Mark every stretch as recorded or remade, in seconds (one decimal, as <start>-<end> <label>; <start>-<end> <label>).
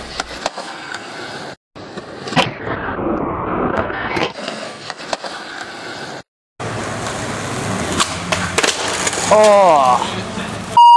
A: 0.0-0.5 recorded; 0.5-1.1 remade; 1.1-3.7 recorded; 3.7-5.0 remade; 5.0-11.0 recorded